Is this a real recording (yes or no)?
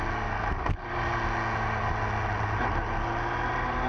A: yes